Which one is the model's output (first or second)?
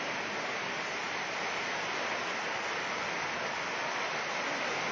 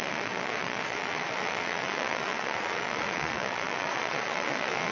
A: second